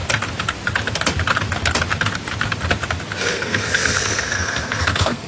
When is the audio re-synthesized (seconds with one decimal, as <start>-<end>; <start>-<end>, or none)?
3.2-5.3